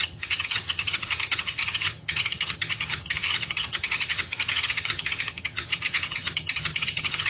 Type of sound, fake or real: fake